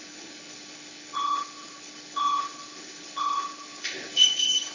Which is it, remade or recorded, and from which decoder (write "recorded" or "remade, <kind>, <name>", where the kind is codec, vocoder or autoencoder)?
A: remade, codec, HILCodec